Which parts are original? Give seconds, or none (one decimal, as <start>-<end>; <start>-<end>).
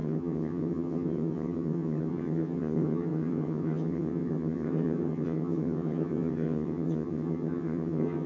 none